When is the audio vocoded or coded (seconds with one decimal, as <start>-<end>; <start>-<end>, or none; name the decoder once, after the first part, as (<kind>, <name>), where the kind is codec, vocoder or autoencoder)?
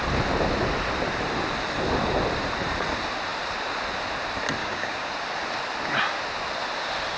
4.6-5.1 (codec, DAC)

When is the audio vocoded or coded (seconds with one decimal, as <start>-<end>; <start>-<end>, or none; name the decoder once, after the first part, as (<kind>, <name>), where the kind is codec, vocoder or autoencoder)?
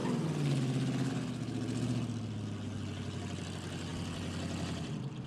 none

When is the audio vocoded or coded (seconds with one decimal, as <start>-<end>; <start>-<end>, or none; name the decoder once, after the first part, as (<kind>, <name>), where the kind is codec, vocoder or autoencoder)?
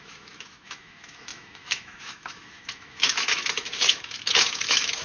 0.0-5.0 (autoencoder, DAC-VAE)